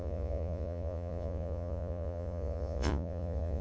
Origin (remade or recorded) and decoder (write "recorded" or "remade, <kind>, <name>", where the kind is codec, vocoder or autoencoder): remade, vocoder, Vocos